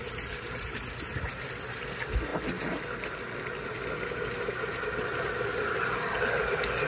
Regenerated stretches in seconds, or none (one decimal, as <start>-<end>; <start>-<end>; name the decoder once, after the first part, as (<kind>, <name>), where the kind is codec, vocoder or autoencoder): none